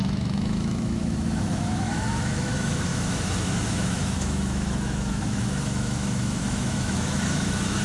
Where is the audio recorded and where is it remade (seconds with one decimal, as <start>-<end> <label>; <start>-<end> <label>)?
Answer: 0.0-7.8 remade